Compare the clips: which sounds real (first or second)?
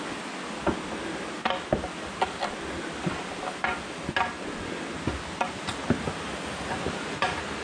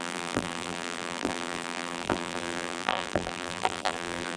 first